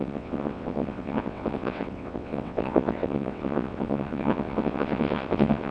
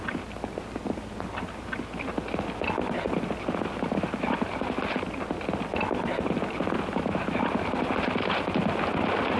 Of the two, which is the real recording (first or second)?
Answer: second